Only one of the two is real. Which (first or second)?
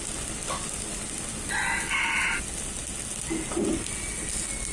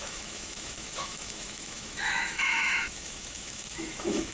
first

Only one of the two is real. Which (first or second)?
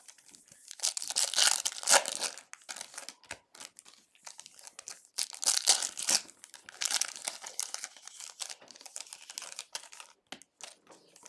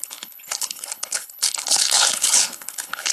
first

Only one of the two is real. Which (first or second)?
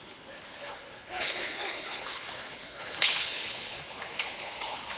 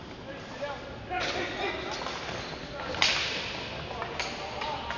second